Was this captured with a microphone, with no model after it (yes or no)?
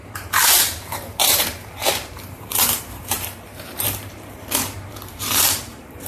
no